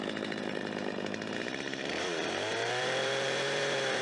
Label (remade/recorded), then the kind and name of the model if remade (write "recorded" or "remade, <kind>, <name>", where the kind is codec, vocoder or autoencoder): remade, vocoder, BigVGAN v2